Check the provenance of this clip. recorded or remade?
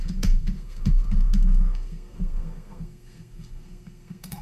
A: remade